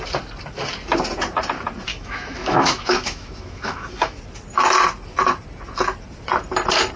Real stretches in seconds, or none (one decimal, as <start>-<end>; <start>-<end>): 0.0-1.9; 4.2-7.0